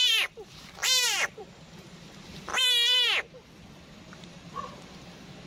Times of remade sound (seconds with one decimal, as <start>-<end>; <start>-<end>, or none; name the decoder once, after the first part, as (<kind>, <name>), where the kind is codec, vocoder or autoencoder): 0.0-2.5 (vocoder, BigVGAN v2); 4.1-5.5

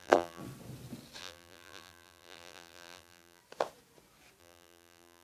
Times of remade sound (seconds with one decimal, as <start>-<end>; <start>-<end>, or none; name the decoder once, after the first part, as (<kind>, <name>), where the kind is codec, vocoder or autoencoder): 0.0-0.4 (vocoder, BigVGAN v2); 1.2-3.4; 4.4-5.2

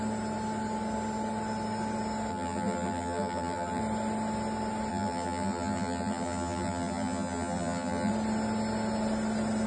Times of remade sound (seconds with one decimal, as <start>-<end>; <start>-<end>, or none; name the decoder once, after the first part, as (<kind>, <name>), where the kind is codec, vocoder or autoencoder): 2.3-3.8 (vocoder, BigVGAN v2); 4.9-8.1

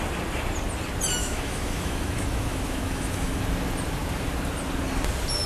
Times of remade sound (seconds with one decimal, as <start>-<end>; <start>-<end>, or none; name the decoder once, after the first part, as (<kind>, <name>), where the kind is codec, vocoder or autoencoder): 1.2-3.4 (autoencoder, DAC-VAE)

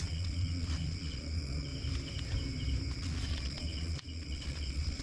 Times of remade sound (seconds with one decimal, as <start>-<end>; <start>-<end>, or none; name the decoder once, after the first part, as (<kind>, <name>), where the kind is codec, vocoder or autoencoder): 0.0-1.7 (vocoder, Vocos); 3.0-5.0

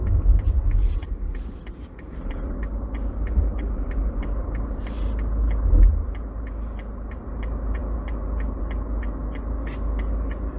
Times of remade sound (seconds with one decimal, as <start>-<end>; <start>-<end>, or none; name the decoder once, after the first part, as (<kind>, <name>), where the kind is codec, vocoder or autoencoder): none